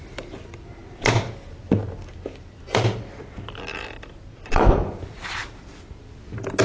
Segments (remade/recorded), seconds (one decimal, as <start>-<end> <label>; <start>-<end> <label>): 0.0-6.6 recorded